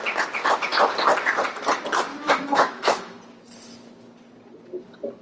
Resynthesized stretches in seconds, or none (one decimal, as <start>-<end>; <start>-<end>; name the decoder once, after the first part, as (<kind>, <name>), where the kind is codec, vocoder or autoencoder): 2.1-3.2 (autoencoder, DAC-VAE)